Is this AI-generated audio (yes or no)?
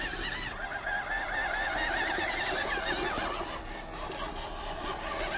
no